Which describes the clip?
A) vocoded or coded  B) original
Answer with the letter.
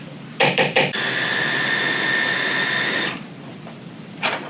A